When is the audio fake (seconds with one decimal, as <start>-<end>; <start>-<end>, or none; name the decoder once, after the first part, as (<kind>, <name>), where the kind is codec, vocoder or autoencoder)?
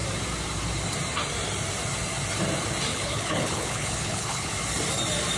2.9-4.5 (codec, HILCodec)